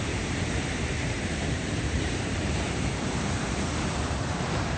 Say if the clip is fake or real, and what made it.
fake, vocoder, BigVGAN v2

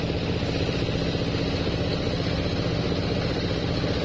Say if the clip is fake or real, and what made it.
real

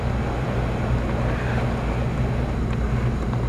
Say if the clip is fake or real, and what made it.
real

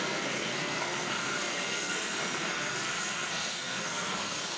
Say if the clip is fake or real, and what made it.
fake, codec, SNAC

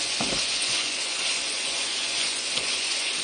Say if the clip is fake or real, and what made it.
fake, vocoder, Vocos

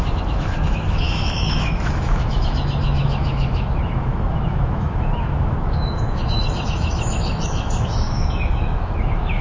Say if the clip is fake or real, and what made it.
fake, autoencoder, DAC-VAE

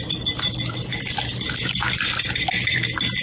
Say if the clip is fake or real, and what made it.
real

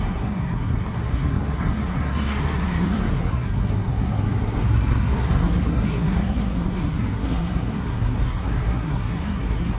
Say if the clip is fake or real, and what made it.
fake, codec, SNAC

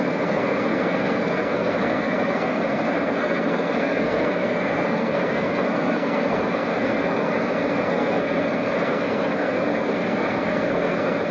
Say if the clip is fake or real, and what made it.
fake, codec, SNAC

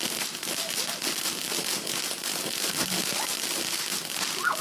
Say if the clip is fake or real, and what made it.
real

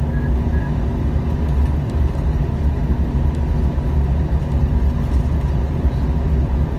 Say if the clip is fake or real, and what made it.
real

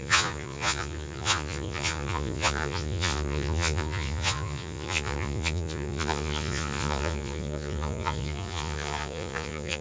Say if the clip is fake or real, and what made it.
fake, vocoder, Vocos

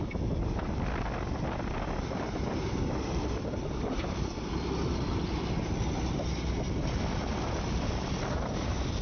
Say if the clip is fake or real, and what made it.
real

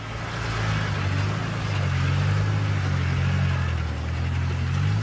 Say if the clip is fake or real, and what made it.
real